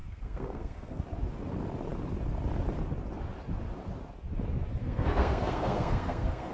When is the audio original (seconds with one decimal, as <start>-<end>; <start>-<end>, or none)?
1.0-4.8